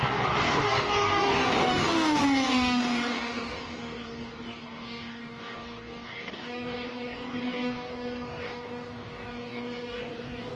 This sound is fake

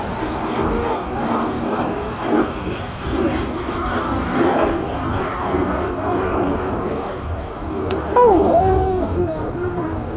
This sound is fake